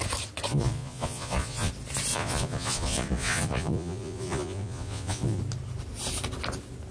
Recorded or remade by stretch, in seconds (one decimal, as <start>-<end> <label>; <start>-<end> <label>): 0.0-0.5 recorded; 0.5-1.7 remade; 1.7-2.1 recorded; 2.1-5.4 remade; 5.4-6.9 recorded